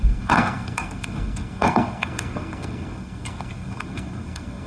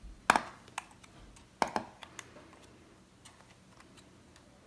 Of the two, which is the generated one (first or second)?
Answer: first